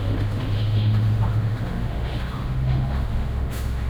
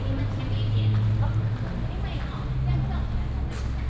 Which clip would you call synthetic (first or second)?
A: first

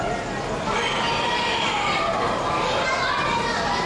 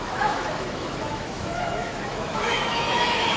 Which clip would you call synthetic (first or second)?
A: second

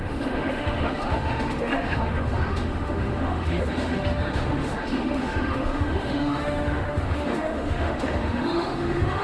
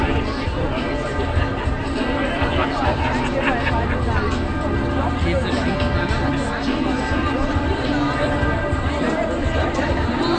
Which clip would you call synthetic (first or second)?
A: first